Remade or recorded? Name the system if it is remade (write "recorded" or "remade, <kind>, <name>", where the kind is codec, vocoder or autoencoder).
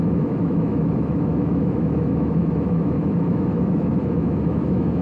remade, autoencoder, DAC-VAE